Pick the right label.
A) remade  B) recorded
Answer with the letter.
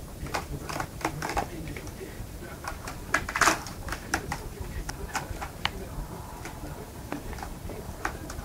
A